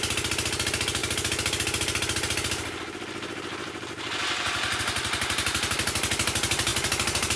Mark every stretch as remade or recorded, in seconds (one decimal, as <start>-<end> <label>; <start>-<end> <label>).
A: 0.0-7.4 recorded